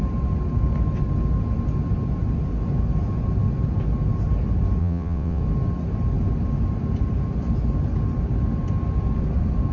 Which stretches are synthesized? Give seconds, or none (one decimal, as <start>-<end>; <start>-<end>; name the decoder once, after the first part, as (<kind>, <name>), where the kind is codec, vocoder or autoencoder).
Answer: 4.8-5.4 (vocoder, WaveNeXt)